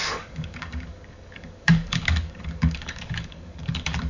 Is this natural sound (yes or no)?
no